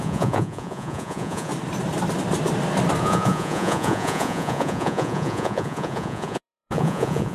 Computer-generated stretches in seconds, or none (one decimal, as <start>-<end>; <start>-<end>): 0.0-1.5; 3.0-7.3